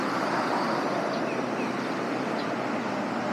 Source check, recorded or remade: recorded